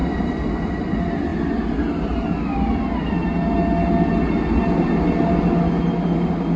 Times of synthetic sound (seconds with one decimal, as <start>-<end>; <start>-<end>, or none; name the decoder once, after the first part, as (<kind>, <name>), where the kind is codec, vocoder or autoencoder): none